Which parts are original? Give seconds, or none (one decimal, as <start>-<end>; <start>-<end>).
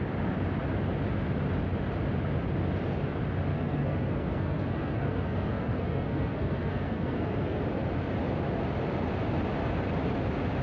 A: 0.0-3.5; 7.6-10.6